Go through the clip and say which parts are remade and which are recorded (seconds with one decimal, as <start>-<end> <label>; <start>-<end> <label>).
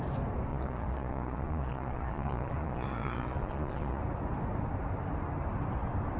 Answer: 0.0-0.5 recorded; 0.5-4.0 remade; 4.0-6.2 recorded